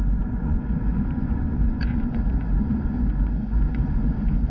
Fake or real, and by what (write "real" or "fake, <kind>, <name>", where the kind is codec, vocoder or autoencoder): fake, vocoder, Vocos